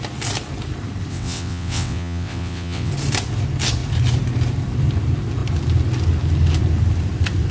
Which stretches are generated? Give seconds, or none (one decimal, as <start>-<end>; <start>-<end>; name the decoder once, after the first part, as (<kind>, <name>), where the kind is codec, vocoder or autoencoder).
1.1-2.9 (vocoder, WaveNeXt)